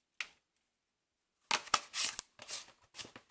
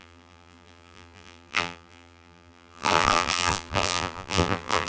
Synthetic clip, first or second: second